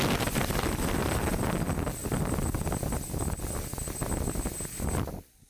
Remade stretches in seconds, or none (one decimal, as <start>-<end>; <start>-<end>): 2.0-4.1